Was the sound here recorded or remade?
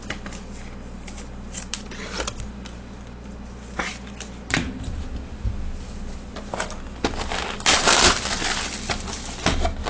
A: recorded